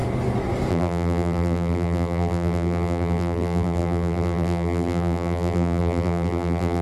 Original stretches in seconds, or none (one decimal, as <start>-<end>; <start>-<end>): 0.0-0.7